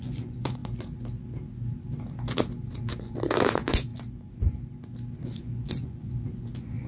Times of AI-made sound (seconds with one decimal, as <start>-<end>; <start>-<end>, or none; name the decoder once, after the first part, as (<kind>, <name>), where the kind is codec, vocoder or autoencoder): 0.0-0.6 (vocoder, Vocos); 2.8-3.9; 5.2-6.9